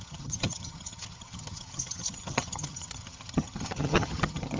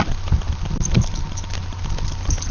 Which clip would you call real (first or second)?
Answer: second